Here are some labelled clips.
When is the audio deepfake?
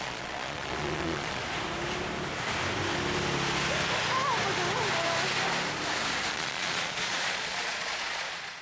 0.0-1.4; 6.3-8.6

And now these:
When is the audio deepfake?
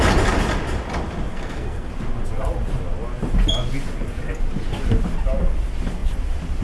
1.3-1.9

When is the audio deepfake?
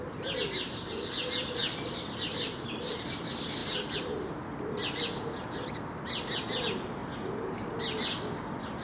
1.6-2.9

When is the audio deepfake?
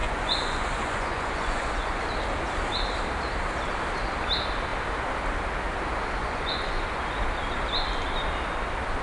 0.0-2.0; 6.2-7.0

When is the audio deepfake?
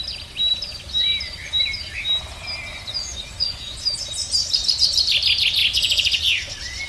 2.7-3.8; 5.6-6.5